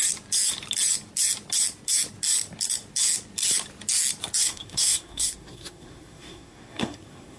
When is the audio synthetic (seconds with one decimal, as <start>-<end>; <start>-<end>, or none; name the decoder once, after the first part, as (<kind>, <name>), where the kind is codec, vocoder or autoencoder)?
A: 4.4-7.4 (codec, SNAC)